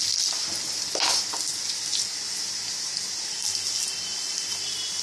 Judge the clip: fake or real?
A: real